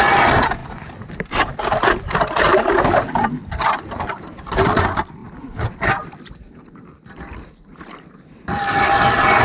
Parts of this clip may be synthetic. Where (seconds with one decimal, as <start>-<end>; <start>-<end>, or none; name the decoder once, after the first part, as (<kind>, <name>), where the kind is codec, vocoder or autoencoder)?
7.7-8.6 (vocoder, BigVGAN v2)